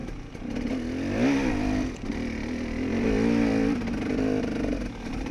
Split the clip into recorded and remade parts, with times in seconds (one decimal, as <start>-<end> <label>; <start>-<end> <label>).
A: 0.0-5.3 recorded